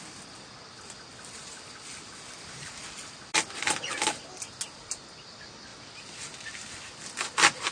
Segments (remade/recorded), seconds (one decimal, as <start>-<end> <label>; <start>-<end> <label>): 0.0-7.7 recorded